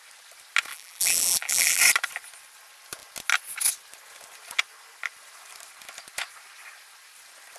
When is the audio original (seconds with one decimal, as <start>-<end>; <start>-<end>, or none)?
0.0-0.7; 1.8-7.6